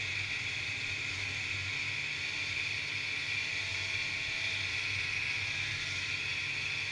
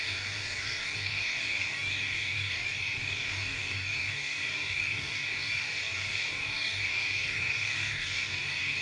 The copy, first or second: second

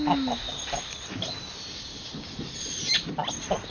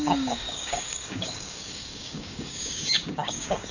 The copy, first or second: second